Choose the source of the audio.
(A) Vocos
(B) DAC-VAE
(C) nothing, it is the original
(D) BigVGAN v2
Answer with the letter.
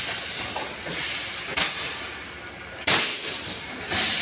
C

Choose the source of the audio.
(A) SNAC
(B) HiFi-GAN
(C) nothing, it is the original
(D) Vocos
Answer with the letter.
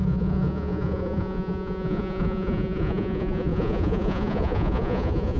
D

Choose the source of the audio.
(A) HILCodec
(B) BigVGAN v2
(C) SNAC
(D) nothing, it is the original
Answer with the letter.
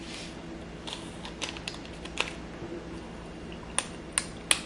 D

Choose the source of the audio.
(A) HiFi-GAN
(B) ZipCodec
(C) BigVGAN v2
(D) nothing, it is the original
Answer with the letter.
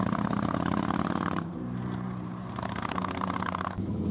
C